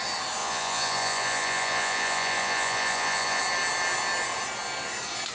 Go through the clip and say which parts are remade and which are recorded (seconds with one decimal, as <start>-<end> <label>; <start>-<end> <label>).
0.0-0.4 recorded; 0.4-3.4 remade; 3.4-5.3 recorded